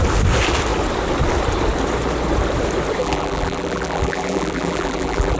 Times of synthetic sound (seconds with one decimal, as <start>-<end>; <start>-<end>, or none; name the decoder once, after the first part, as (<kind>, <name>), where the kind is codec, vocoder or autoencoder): 3.0-5.4 (vocoder, BigVGAN v2)